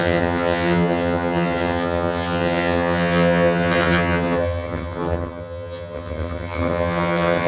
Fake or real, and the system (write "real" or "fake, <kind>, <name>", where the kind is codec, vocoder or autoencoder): fake, vocoder, HiFi-GAN